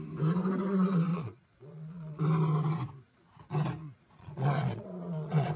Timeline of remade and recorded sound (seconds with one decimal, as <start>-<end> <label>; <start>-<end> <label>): 0.0-1.1 recorded; 1.1-2.2 remade; 2.2-3.8 recorded; 3.8-5.6 remade